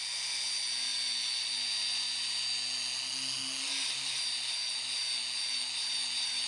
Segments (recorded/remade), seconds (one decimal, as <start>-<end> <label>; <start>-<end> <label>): 0.0-6.5 recorded